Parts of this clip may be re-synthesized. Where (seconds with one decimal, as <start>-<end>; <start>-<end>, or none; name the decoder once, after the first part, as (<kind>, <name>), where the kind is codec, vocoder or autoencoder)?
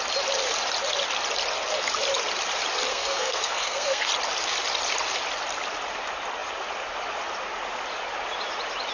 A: 2.9-4.1 (codec, SNAC)